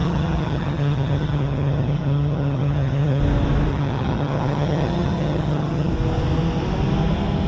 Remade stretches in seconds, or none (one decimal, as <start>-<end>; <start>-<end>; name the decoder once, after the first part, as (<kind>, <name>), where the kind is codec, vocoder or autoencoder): 0.0-3.2 (vocoder, HiFi-GAN); 3.7-5.9